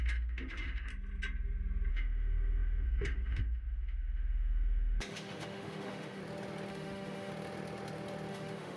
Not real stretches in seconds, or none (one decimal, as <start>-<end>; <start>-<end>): 0.0-0.9; 1.9-6.2; 6.7-7.3; 8.3-8.8